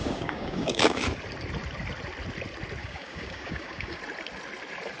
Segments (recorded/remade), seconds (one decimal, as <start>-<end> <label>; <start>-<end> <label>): 0.0-1.0 remade; 1.0-2.8 recorded; 2.8-4.0 remade; 4.0-5.0 recorded